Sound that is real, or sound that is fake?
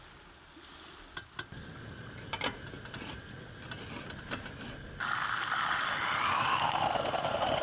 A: real